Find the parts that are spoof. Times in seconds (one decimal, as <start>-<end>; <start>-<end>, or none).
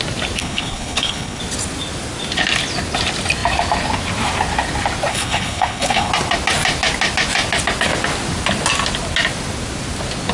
0.4-1.4; 5.1-6.1